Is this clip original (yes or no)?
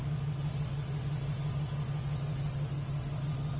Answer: yes